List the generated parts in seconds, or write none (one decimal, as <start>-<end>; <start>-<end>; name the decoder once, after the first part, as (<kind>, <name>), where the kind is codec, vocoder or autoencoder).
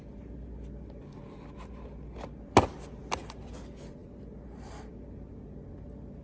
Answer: none